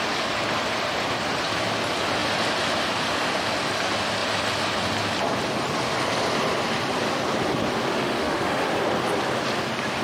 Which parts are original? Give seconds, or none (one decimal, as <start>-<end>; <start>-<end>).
0.0-7.9; 8.7-10.0